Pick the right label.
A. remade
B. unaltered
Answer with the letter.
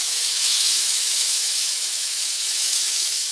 A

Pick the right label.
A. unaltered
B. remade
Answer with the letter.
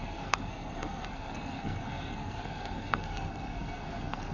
B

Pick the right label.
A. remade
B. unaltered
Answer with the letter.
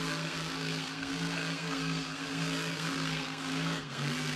A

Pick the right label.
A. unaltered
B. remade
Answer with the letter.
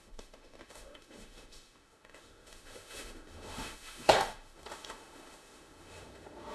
B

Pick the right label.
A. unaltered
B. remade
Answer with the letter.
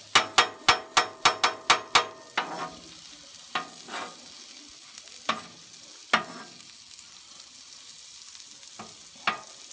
A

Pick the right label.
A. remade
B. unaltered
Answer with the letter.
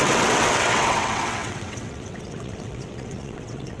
A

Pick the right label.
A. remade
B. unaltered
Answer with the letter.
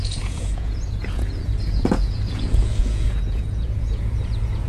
A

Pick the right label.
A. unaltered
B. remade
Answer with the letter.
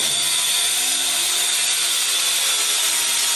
A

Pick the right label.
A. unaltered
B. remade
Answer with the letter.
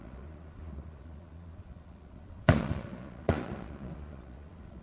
B